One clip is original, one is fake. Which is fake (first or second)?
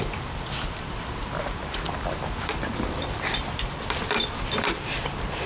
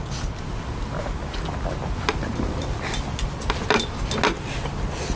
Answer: first